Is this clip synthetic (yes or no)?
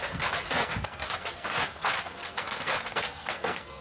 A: yes